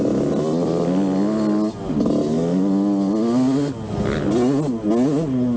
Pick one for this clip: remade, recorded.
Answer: recorded